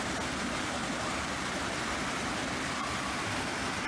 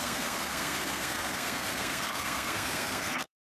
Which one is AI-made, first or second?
second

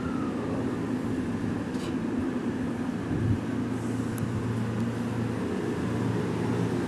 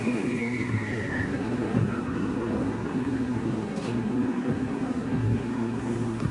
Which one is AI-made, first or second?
second